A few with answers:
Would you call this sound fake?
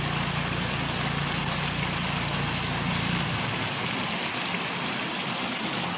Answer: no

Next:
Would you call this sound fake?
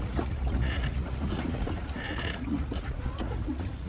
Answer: yes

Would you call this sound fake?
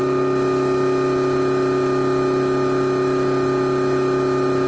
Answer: no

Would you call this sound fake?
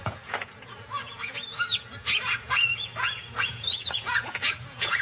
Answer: yes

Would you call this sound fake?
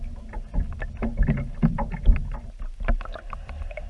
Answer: no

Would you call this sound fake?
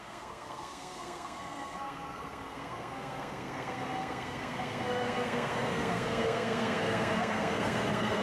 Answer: yes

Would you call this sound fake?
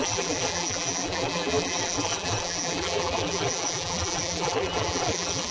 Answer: yes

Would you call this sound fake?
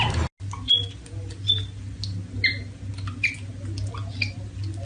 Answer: no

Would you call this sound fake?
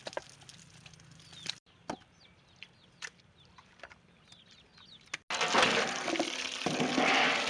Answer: no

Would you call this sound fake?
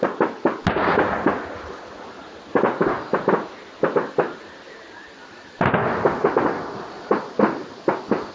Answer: no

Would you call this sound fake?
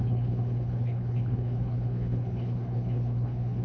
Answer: yes